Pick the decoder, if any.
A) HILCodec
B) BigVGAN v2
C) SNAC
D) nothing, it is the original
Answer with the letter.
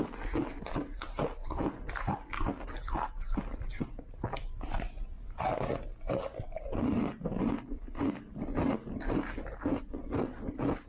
D